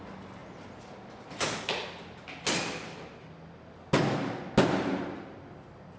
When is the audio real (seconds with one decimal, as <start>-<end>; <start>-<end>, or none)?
0.0-6.0